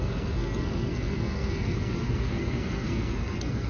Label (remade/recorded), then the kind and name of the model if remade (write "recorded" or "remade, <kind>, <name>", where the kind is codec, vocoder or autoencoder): remade, codec, SNAC